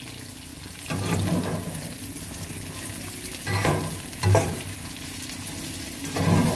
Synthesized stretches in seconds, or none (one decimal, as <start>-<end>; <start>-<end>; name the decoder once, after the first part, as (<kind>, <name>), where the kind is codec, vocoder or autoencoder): none